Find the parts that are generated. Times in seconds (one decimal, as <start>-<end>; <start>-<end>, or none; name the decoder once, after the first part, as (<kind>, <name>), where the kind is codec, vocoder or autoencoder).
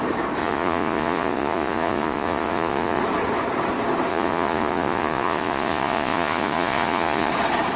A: 0.4-3.0 (vocoder, Vocos); 4.1-7.3